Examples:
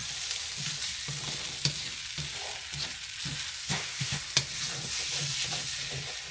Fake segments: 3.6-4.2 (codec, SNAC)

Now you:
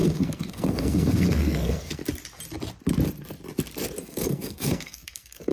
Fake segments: 0.0-2.0 (codec, SNAC); 4.0-5.5

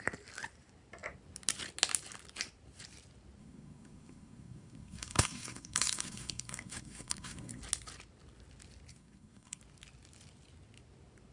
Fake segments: 3.4-7.6 (codec, SNAC); 8.9-9.6

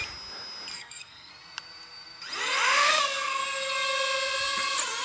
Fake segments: 0.7-1.3 (codec, SNAC); 2.8-3.4

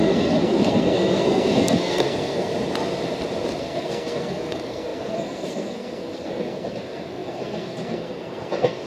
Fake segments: 0.0-2.5 (codec, SNAC); 3.6-8.9

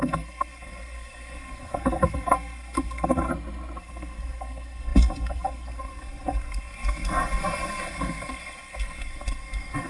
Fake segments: 0.0-3.3 (codec, SNAC); 3.8-9.9

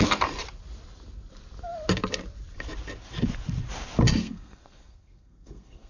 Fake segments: 4.2-5.9 (codec, SNAC)

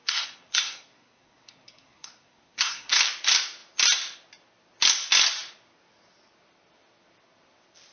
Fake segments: 0.0-3.0 (codec, SNAC)